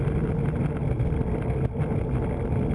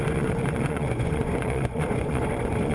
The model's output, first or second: second